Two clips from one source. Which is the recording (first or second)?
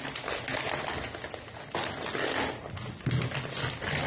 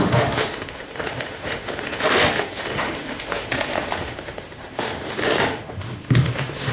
first